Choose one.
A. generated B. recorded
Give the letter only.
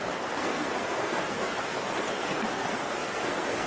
A